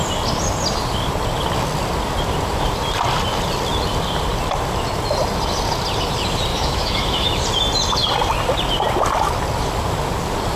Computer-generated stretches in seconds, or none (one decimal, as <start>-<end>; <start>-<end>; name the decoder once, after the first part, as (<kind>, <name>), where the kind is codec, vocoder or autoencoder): 6.5-7.4 (autoencoder, DAC-VAE)